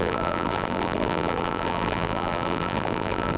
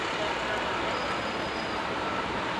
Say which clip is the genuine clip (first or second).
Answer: second